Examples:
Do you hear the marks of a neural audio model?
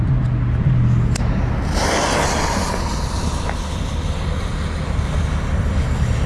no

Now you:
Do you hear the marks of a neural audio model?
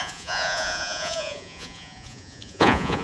yes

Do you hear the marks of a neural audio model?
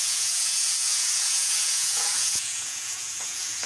yes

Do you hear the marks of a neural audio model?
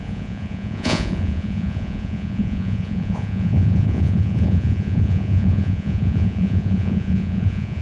yes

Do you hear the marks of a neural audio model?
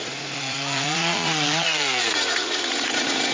yes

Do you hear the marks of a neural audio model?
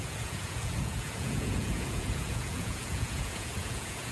yes